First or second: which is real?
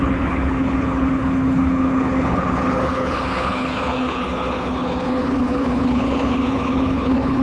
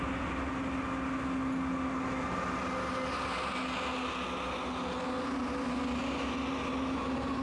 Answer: second